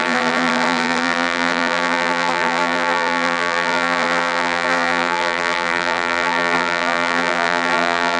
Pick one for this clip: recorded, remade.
remade